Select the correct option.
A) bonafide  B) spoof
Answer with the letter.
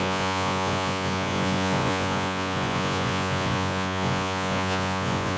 B